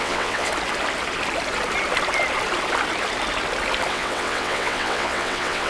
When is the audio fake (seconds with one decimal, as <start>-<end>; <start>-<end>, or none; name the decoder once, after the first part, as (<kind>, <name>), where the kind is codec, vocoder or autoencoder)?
0.0-0.5 (vocoder, WaveNeXt); 3.9-5.7